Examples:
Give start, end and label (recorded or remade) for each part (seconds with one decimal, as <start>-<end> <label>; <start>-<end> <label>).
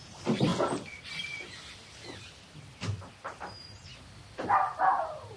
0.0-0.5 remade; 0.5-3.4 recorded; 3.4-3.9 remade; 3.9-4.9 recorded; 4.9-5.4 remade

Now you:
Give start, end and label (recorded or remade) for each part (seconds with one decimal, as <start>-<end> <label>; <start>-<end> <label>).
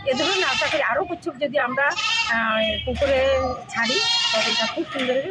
0.0-1.6 recorded; 1.6-2.3 remade; 2.3-5.3 recorded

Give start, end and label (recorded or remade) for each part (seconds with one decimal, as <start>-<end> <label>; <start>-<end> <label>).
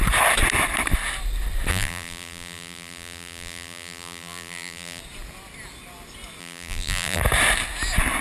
0.0-1.7 recorded; 1.7-5.0 remade; 5.0-6.4 recorded; 6.4-7.2 remade; 7.2-8.2 recorded